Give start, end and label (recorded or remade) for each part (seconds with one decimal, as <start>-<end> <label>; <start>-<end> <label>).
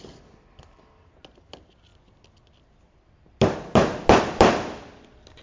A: 0.0-5.4 recorded